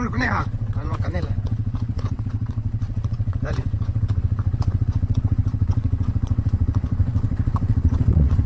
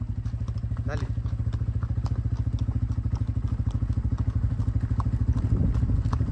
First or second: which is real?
second